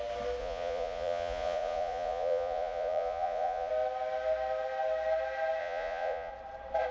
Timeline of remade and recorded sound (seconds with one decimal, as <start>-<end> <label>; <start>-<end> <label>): 0.0-0.4 recorded; 0.4-3.7 remade; 3.7-5.6 recorded; 5.6-6.3 remade; 6.3-6.9 recorded